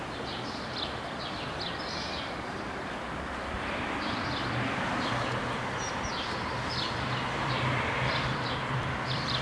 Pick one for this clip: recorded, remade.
remade